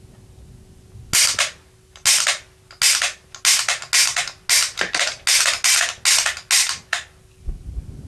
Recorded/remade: recorded